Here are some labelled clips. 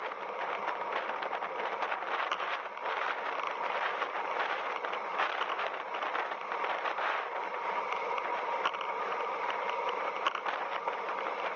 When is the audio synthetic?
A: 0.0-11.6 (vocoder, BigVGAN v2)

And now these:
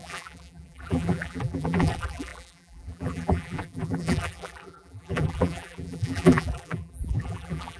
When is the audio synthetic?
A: 0.0-7.8 (vocoder, BigVGAN v2)

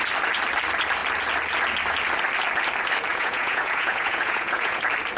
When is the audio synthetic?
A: 3.1-4.8 (vocoder, Vocos)

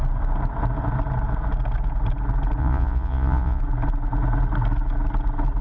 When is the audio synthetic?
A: 2.6-3.6 (vocoder, Vocos)

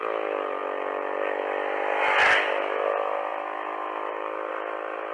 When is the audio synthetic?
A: none

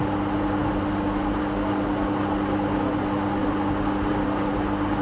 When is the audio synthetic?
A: none